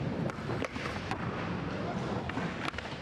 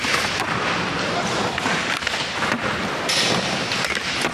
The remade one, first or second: second